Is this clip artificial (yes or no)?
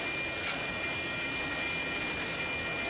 no